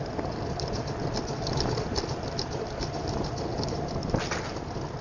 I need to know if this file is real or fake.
real